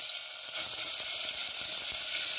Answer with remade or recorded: recorded